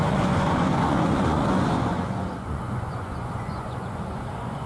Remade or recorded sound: remade